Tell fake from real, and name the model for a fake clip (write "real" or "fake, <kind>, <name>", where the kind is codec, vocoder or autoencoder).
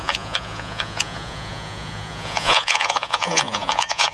fake, vocoder, Vocos